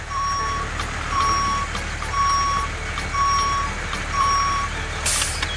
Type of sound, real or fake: real